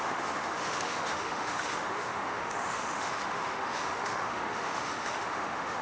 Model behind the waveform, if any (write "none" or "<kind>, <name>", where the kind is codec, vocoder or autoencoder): autoencoder, DAC-VAE